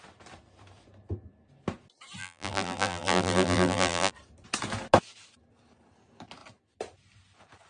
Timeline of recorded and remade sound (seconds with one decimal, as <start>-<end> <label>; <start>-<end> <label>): 0.0-2.2 recorded; 2.2-4.1 remade; 4.1-7.7 recorded